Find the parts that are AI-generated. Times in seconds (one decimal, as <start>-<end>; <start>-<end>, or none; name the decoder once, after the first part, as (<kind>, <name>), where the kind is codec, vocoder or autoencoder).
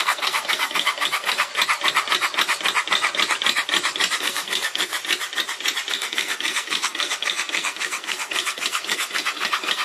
0.0-1.5 (codec, SNAC); 4.2-4.9; 5.9-9.8